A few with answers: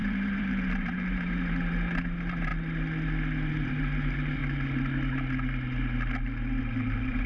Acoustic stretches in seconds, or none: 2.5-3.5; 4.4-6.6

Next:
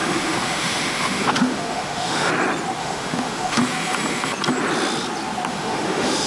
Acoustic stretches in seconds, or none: 2.3-2.8; 3.6-5.5